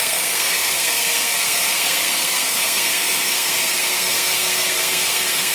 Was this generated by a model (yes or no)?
yes